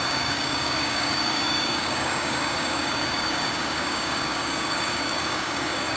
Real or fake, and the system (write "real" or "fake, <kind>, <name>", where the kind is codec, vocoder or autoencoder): fake, codec, DAC